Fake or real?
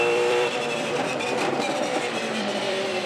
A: fake